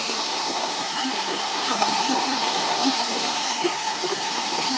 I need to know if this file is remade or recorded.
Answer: remade